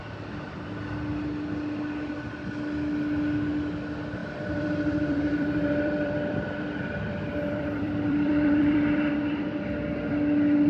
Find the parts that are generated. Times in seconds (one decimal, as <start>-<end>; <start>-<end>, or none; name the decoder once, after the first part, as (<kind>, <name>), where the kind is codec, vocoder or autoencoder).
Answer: 4.2-9.1 (vocoder, BigVGAN v2)